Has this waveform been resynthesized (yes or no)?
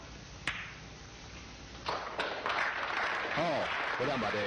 yes